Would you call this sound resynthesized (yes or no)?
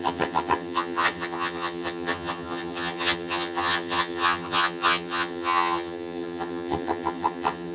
yes